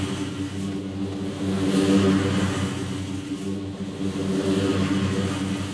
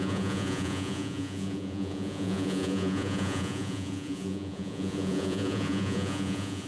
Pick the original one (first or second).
first